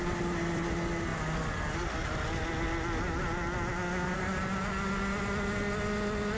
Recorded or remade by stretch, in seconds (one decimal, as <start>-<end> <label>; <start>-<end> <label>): 0.0-6.4 recorded